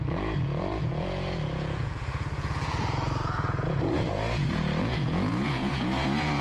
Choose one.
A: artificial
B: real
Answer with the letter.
A